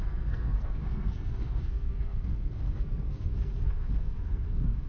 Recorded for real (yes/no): no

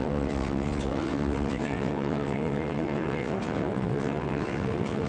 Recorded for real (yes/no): no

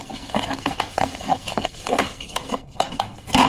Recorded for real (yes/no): no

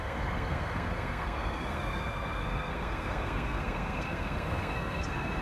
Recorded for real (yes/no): no